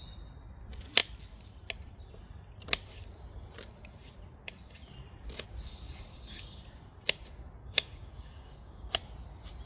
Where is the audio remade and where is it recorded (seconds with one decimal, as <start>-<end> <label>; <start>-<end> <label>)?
0.0-6.1 recorded; 6.1-6.6 remade; 6.6-7.6 recorded; 7.6-8.9 remade; 8.9-9.7 recorded